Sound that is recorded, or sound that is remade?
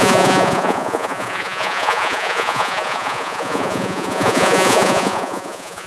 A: remade